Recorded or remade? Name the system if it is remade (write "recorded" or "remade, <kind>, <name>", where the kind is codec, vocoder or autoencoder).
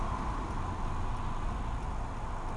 recorded